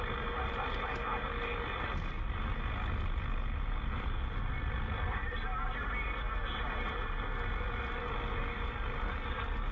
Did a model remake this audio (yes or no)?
no